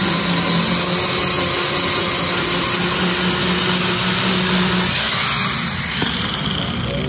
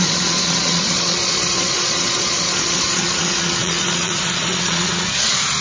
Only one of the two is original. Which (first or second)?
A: first